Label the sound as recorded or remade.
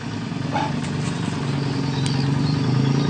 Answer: recorded